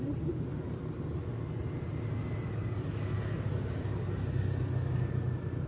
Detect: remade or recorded recorded